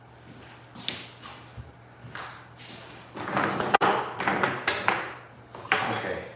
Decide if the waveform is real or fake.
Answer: real